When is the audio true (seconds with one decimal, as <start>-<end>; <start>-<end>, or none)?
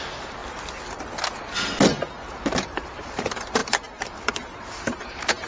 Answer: 0.4-2.3